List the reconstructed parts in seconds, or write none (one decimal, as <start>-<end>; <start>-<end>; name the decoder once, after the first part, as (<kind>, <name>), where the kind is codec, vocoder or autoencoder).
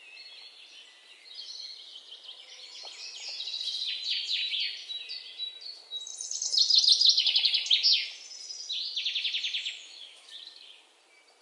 9.6-10.3 (autoencoder, DAC-VAE)